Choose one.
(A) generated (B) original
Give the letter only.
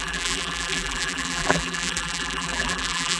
A